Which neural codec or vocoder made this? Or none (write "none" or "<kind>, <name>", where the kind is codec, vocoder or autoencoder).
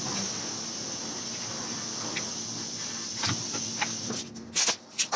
none